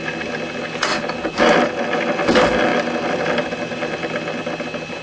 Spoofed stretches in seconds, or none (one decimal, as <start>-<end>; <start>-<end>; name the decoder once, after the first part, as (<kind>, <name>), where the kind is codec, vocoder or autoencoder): none

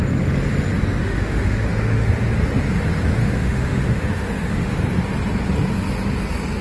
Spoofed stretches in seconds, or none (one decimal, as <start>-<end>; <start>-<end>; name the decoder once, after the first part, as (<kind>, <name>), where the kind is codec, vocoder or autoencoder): 1.0-2.1 (autoencoder, DAC-VAE); 3.2-4.8

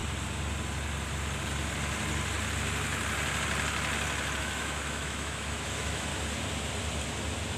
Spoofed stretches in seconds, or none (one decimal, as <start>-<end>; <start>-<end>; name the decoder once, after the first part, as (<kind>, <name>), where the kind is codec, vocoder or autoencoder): 4.4-6.1 (autoencoder, DAC-VAE)

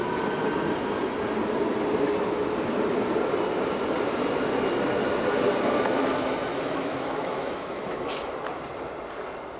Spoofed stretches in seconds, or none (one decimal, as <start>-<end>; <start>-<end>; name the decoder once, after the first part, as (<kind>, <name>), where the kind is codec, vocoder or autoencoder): 6.5-8.3 (autoencoder, DAC-VAE)